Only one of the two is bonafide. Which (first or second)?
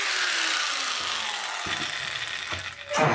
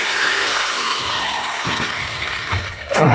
first